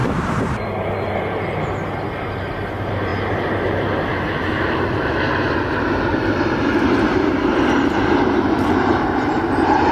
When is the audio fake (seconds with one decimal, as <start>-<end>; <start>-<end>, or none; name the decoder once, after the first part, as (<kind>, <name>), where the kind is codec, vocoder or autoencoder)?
2.5-9.9 (vocoder, BigVGAN v2)